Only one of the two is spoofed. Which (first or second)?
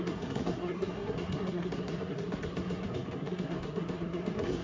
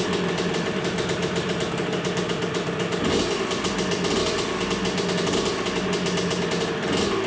first